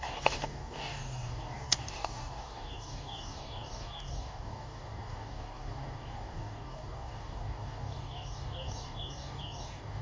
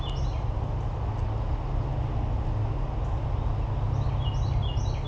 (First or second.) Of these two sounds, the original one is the second